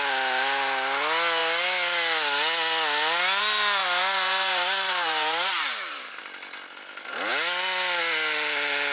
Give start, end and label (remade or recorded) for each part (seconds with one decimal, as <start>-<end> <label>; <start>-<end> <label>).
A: 0.0-3.8 recorded; 3.8-6.2 remade; 6.2-8.9 recorded